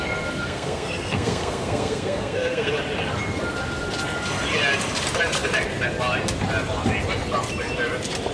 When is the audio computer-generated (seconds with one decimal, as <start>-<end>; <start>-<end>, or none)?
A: 0.4-2.7